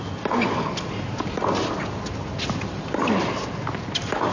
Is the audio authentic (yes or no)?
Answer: yes